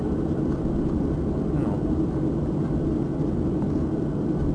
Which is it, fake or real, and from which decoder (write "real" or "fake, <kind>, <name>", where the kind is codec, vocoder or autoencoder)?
fake, vocoder, BigVGAN v2